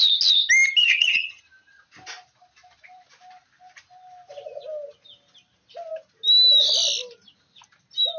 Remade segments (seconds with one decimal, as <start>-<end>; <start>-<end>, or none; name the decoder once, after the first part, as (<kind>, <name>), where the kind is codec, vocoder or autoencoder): 0.8-1.4 (vocoder, HiFi-GAN)